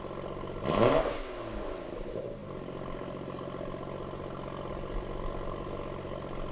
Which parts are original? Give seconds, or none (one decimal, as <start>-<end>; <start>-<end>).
0.0-6.5

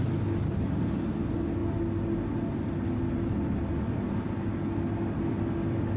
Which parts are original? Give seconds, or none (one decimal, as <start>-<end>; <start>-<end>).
0.0-6.0

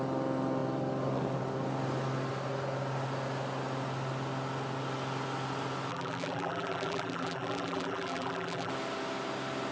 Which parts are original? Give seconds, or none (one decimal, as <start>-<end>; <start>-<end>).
0.0-5.9; 8.7-9.7